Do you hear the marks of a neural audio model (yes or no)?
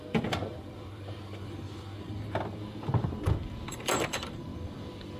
yes